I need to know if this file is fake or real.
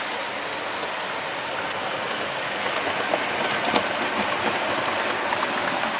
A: real